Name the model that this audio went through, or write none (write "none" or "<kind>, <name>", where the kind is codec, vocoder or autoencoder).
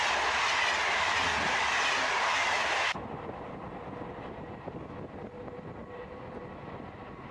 none